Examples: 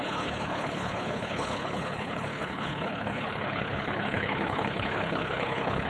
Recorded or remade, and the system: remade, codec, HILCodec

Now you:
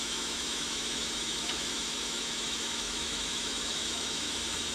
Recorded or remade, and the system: remade, autoencoder, DAC-VAE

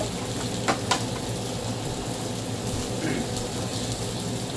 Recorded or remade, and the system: recorded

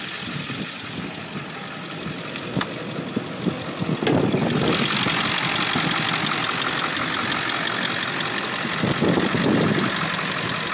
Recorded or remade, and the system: recorded